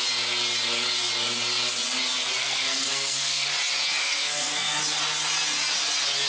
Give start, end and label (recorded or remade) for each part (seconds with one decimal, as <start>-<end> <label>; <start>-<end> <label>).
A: 0.0-2.4 recorded; 2.4-3.5 remade; 3.5-4.0 recorded; 4.0-4.8 remade; 4.8-6.3 recorded

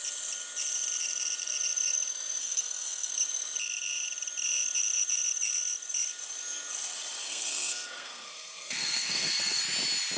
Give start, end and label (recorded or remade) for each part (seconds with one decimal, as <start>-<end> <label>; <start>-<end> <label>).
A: 0.0-2.4 recorded; 2.4-3.1 remade; 3.1-7.2 recorded; 7.2-9.6 remade; 9.6-10.2 recorded